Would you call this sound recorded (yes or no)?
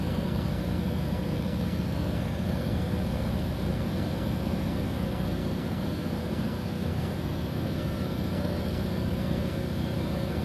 no